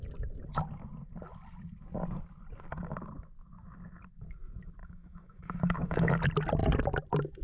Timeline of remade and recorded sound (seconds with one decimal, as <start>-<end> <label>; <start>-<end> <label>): 0.0-4.8 recorded; 4.8-6.1 remade; 6.1-7.4 recorded